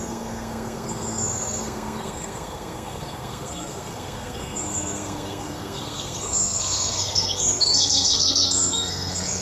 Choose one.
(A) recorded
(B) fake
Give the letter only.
B